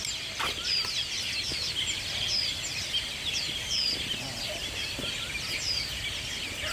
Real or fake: real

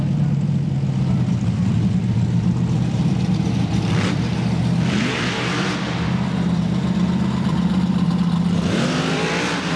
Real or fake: fake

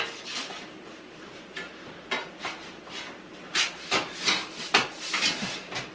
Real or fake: real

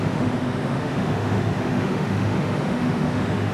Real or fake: fake